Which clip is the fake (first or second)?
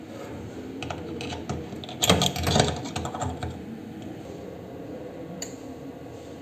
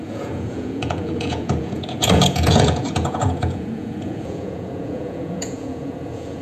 second